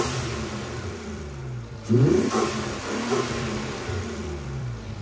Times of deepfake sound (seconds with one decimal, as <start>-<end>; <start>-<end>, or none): 0.0-1.4; 3.1-5.0